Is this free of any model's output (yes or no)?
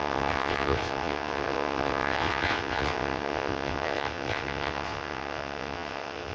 no